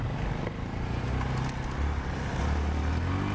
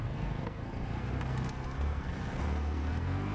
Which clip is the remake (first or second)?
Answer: second